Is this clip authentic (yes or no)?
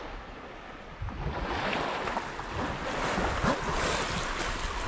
yes